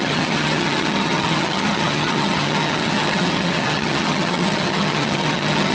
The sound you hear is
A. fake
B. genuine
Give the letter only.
A